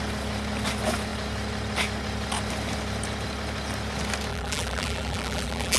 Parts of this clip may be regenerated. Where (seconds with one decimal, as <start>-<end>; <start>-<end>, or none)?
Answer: 4.3-5.8